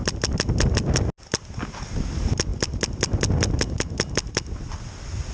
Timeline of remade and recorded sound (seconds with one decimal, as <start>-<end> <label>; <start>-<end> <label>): 0.0-5.3 recorded